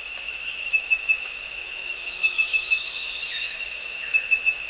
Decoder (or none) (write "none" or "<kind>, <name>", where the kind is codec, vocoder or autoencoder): autoencoder, DAC-VAE